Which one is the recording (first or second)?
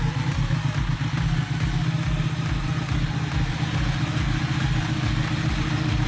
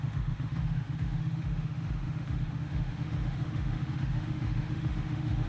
first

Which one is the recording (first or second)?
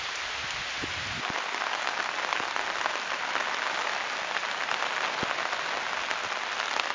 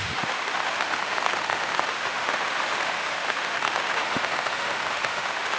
first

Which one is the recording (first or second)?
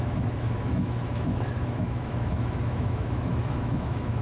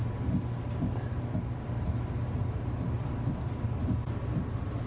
second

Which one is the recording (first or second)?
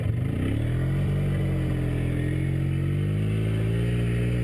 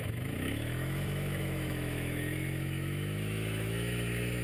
first